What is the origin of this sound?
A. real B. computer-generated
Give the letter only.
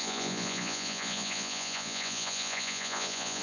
B